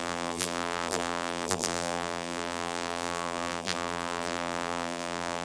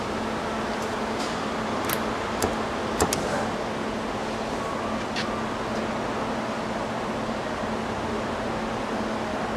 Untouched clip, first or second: second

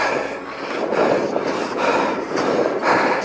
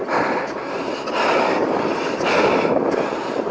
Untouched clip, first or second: first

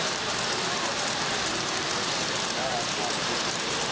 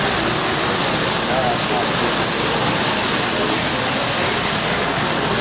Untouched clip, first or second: second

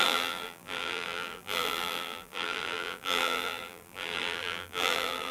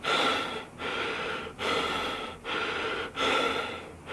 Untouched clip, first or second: second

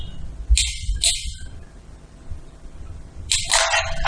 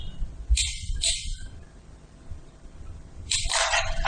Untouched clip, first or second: first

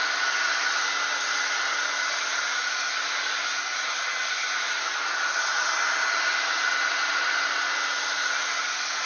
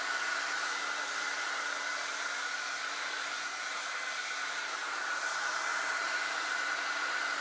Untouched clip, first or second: first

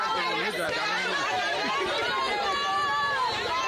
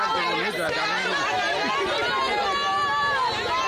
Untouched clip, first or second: second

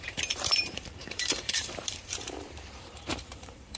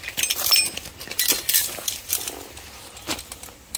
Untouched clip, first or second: second